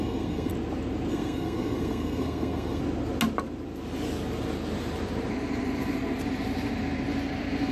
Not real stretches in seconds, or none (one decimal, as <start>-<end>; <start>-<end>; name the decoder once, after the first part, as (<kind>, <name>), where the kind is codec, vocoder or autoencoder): 0.0-0.5 (codec, SNAC); 1.1-2.8